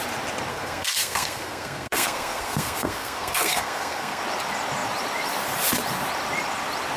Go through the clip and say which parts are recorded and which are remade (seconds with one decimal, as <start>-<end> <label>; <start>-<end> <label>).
0.0-0.5 recorded; 0.5-4.2 remade; 4.2-7.0 recorded